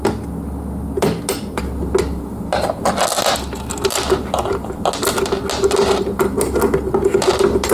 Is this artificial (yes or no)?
no